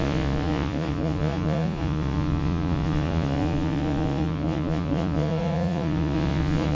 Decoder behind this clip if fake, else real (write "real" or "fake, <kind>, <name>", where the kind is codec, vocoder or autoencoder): fake, vocoder, Vocos